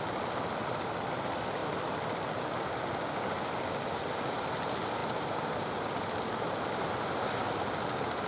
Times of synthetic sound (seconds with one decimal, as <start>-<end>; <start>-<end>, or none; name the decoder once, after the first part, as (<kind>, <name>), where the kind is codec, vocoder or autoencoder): none